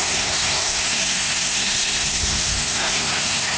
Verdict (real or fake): fake